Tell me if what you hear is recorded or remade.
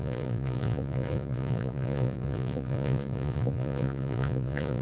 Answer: remade